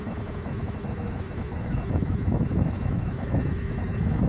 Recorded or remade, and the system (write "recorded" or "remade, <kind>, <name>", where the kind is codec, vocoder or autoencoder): remade, autoencoder, DAC-VAE